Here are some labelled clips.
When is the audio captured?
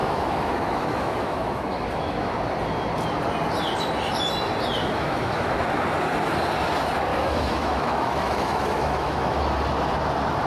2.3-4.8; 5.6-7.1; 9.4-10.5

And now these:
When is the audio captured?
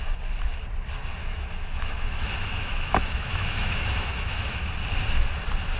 0.0-1.2; 4.7-5.8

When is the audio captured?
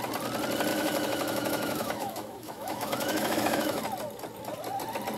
0.0-0.7; 3.8-5.2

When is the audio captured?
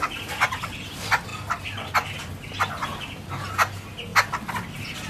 0.0-5.1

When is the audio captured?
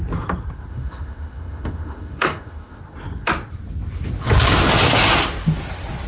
0.0-0.7; 2.8-6.1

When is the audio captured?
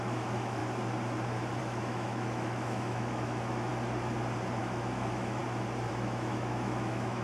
0.6-1.6; 3.7-4.6; 5.4-5.9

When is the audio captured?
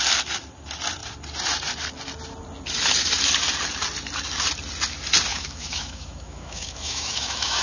0.0-5.3